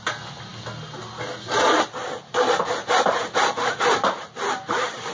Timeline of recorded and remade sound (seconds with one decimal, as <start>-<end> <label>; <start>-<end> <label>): 0.0-5.1 recorded